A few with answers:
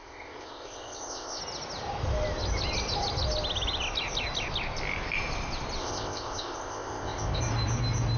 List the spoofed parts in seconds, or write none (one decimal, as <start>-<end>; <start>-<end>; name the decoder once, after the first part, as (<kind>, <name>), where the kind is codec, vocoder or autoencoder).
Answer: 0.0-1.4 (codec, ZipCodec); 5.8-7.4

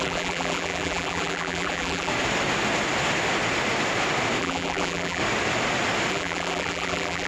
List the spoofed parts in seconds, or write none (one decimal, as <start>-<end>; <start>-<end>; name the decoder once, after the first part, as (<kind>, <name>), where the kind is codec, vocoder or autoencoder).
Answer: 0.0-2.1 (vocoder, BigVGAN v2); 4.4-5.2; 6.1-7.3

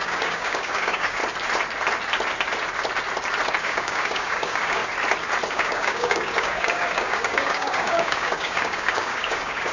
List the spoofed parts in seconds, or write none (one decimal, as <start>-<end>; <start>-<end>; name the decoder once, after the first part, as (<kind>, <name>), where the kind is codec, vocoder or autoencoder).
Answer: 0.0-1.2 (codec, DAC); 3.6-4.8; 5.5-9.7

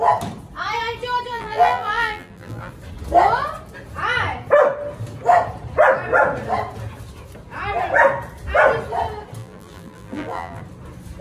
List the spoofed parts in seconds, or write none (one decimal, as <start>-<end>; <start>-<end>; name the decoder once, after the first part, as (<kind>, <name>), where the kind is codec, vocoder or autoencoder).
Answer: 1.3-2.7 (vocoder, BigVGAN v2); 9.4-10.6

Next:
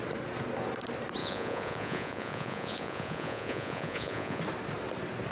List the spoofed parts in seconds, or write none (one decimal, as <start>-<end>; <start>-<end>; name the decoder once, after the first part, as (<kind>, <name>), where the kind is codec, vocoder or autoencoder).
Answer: 1.2-4.4 (vocoder, Vocos)

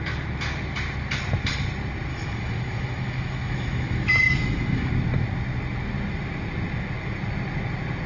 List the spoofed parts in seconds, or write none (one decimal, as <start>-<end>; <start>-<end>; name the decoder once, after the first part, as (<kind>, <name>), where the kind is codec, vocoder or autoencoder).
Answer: 2.1-4.9 (autoencoder, DAC-VAE)

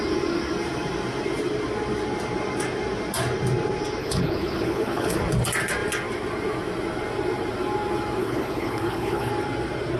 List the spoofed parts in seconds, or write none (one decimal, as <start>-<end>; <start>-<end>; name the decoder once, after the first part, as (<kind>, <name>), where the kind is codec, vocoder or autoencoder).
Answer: 4.0-5.2 (codec, HILCodec); 8.2-9.3